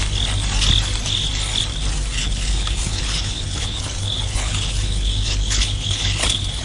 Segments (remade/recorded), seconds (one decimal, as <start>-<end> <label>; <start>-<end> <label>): 0.0-2.2 recorded; 2.2-6.6 remade